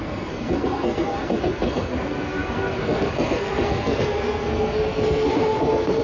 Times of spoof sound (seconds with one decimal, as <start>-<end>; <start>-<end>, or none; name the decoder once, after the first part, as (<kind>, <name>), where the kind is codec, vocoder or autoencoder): 0.0-6.0 (codec, SNAC)